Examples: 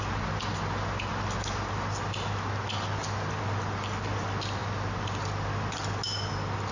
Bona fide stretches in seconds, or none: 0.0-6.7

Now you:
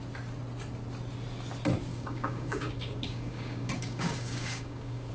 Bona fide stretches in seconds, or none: 0.0-1.9

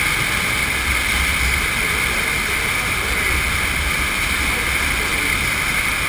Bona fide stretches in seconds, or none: 0.0-6.1

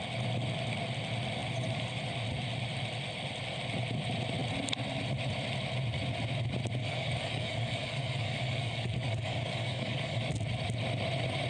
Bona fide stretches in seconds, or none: 0.0-6.8; 10.3-11.5

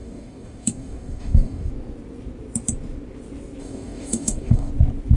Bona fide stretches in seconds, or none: 1.7-3.6; 4.7-5.2

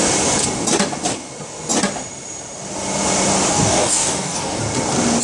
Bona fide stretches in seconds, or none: 0.0-3.5; 4.6-5.2

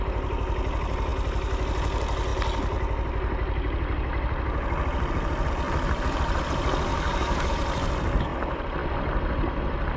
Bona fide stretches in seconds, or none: 0.0-6.9; 7.5-10.0

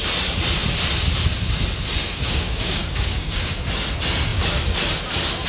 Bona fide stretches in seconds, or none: 0.0-2.0; 3.7-5.5